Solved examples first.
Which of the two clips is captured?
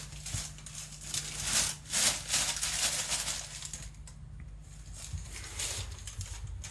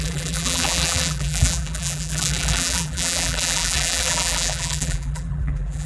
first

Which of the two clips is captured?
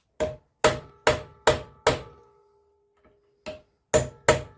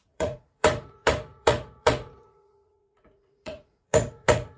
first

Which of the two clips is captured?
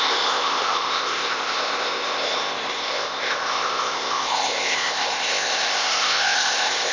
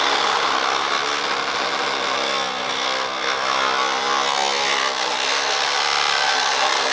second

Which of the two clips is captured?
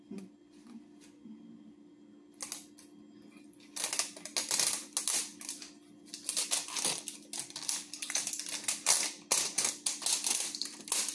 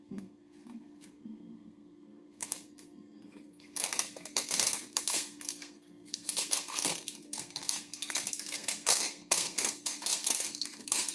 first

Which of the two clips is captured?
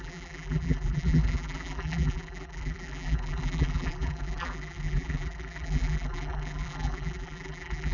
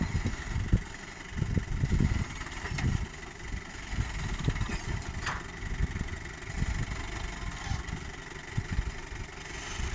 second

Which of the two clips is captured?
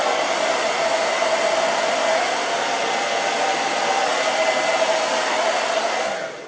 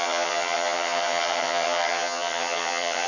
first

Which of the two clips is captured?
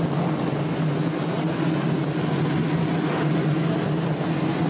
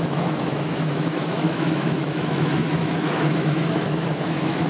first